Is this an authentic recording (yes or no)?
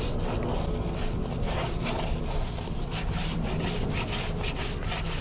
yes